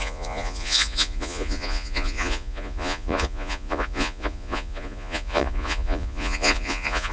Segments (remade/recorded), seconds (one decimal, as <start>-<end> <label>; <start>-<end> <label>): 0.0-7.1 remade

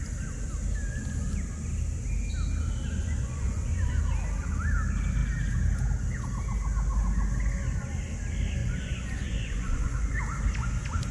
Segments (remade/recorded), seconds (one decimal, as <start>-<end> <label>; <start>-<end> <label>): 0.0-3.0 recorded; 3.0-3.9 remade; 3.9-8.6 recorded; 8.6-10.2 remade; 10.2-11.1 recorded

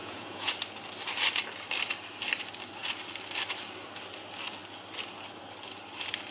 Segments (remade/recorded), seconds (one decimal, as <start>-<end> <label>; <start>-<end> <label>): 0.0-0.5 remade; 0.5-6.3 recorded